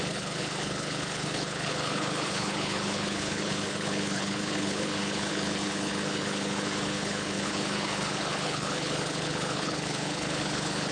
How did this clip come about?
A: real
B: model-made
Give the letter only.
B